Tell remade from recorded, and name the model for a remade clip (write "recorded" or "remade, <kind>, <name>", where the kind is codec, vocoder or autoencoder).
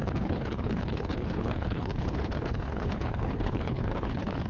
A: remade, codec, HILCodec